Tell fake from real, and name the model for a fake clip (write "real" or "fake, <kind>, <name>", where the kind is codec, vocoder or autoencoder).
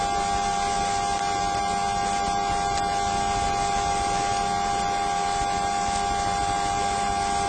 real